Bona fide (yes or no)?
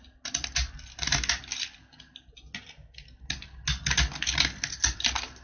yes